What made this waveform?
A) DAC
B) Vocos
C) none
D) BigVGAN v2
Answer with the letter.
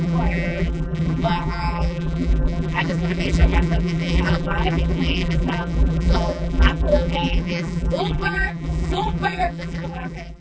D